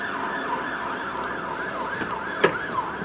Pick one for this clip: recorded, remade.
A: recorded